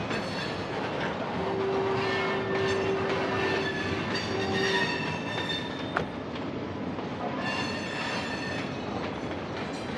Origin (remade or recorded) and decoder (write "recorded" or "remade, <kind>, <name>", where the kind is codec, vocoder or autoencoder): recorded